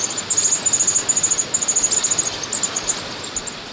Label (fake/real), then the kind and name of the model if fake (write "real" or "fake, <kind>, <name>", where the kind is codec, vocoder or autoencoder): real